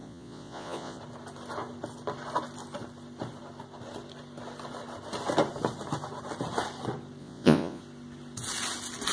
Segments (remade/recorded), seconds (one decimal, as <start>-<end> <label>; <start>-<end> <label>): 0.0-1.0 remade; 1.0-7.2 recorded; 7.2-7.8 remade; 7.8-9.1 recorded